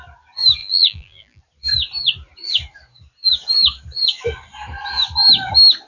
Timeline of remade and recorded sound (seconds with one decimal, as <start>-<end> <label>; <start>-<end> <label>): 0.0-0.6 recorded; 0.6-1.4 remade; 1.4-5.9 recorded